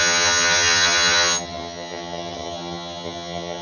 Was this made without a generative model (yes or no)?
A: no